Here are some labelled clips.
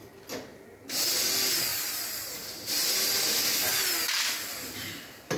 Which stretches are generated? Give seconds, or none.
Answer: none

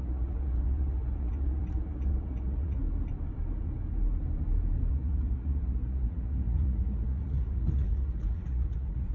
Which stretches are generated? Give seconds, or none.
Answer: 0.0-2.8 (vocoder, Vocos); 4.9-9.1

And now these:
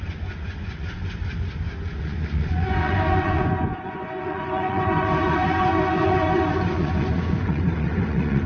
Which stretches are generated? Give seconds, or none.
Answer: 0.0-1.0 (vocoder, Vocos); 1.9-8.5

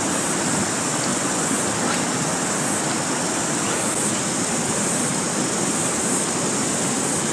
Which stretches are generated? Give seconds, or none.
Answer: 1.1-1.6 (vocoder, Vocos)